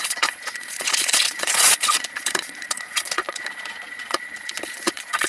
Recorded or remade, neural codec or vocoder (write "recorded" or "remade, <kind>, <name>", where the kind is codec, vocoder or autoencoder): remade, vocoder, Vocos